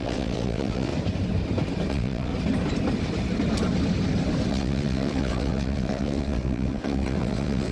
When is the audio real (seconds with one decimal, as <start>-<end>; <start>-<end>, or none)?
0.9-1.9; 2.3-4.5